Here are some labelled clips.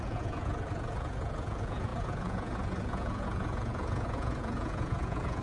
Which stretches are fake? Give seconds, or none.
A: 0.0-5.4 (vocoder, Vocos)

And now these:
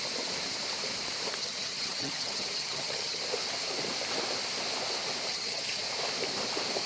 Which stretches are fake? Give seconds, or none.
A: 1.4-3.2 (vocoder, HiFi-GAN); 5.3-5.8

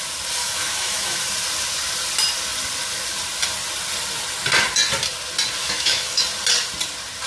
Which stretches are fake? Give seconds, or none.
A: 0.4-1.3 (autoencoder, DAC-VAE); 5.6-6.2

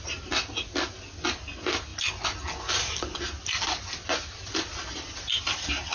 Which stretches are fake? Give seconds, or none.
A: none

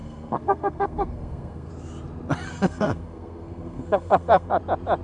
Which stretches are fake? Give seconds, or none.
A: 0.0-1.7 (codec, SNAC); 2.5-4.6

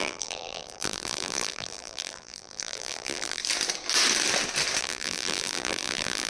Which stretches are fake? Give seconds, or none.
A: 0.0-3.4 (vocoder, BigVGAN v2); 4.8-6.3

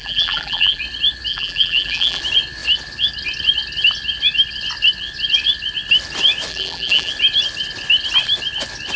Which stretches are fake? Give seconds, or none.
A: 0.0-0.8 (vocoder, BigVGAN v2); 1.3-2.2; 6.5-7.1